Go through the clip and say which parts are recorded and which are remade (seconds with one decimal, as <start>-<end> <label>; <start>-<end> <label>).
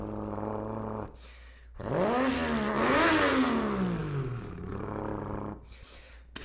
0.0-4.0 recorded; 4.0-5.0 remade; 5.0-6.4 recorded